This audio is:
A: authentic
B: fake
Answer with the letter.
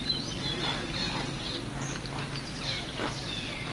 A